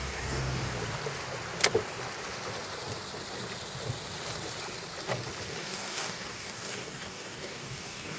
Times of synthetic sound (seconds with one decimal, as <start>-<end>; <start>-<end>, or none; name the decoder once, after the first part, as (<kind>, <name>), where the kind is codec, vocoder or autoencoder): 0.0-0.7 (codec, DAC); 5.6-8.2